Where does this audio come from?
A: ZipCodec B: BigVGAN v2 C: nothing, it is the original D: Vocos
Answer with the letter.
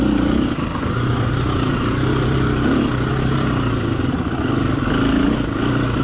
C